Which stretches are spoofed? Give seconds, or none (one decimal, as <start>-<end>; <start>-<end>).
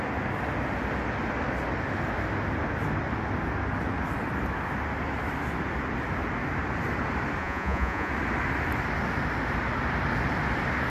7.4-8.1